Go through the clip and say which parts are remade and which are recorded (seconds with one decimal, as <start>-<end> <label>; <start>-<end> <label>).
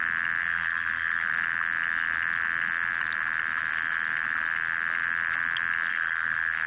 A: 0.0-0.4 recorded; 0.4-1.3 remade; 1.3-5.9 recorded; 5.9-6.7 remade